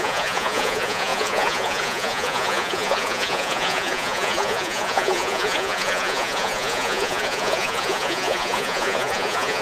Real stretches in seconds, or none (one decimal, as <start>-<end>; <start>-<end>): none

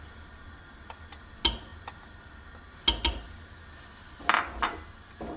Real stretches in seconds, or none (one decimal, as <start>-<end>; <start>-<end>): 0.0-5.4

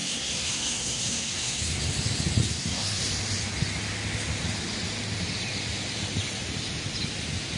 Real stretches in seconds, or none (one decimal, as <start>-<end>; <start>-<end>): 1.8-2.4; 3.0-7.6

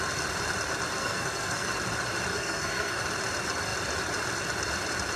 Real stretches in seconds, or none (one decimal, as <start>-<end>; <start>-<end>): 0.0-1.0; 1.7-2.3; 3.0-5.2

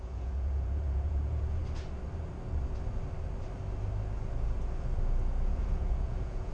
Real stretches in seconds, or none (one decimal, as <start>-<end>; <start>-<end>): 1.6-5.5

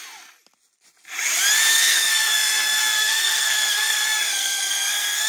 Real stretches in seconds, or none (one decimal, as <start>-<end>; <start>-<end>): 0.0-1.7

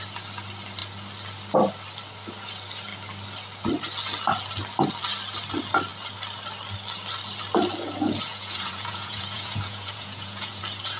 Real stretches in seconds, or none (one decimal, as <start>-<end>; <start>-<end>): 0.0-8.3; 10.6-11.0

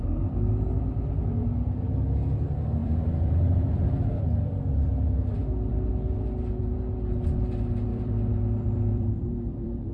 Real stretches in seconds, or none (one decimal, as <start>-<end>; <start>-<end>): 0.0-2.8; 4.2-7.9